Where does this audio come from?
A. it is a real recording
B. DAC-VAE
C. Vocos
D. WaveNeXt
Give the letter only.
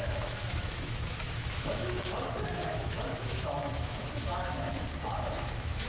B